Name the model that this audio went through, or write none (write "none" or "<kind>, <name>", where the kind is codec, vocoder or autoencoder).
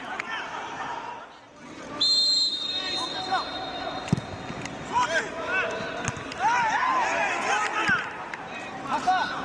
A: none